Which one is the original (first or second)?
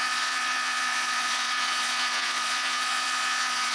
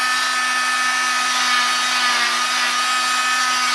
second